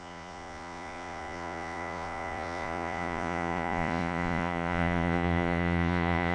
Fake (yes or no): yes